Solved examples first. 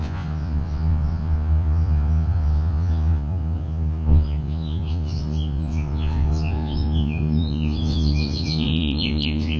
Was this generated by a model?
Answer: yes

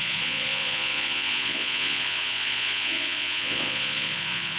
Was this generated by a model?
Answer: yes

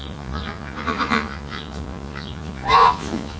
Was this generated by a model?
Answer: yes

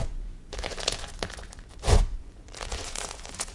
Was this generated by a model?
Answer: yes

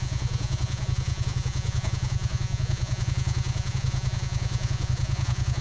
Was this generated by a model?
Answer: yes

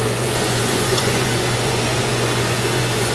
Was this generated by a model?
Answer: yes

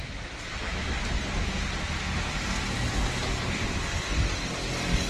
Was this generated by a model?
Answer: no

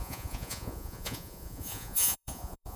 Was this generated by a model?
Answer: yes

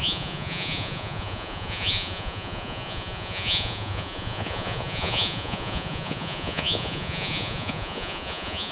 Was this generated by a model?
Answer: yes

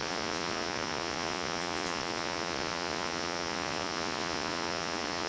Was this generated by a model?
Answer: yes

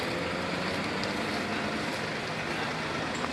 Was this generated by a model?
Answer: no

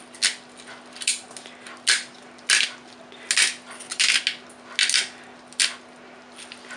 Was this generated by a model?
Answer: no